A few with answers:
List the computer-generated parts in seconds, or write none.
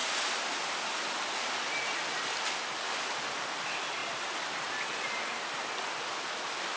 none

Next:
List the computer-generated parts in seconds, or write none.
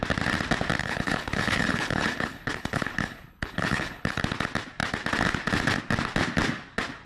0.8-4.2 (codec, HILCodec)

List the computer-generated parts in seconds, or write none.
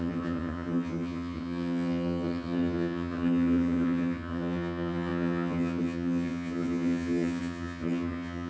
0.0-8.5 (vocoder, HiFi-GAN)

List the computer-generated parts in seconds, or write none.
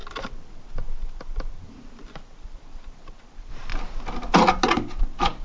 0.0-3.7 (vocoder, BigVGAN v2); 5.0-5.4